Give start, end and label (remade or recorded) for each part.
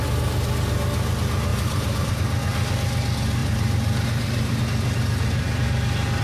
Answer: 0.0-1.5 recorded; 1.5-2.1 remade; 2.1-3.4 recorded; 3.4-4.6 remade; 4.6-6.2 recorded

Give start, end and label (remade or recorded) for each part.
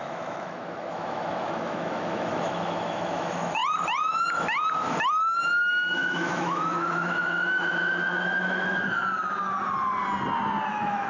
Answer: 0.0-3.6 remade; 3.6-5.7 recorded; 5.7-9.0 remade; 9.0-10.7 recorded; 10.7-11.1 remade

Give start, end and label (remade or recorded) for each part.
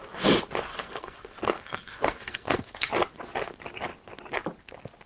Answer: 0.0-0.7 recorded; 0.7-2.9 remade; 2.9-5.1 recorded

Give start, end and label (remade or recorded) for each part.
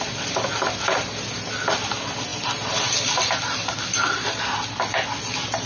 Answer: 0.0-5.7 recorded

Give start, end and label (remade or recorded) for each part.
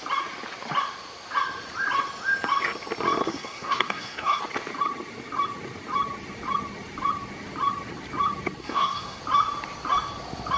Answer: 0.0-3.2 recorded; 3.2-4.4 remade; 4.4-8.6 recorded; 8.6-9.2 remade; 9.2-10.6 recorded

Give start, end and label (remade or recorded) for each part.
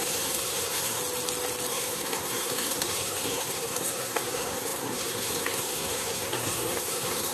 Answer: 0.0-1.0 remade; 1.0-1.7 recorded; 1.7-7.3 remade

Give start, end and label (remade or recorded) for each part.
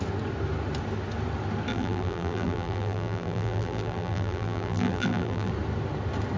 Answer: 0.0-1.7 recorded; 1.7-5.5 remade; 5.5-6.4 recorded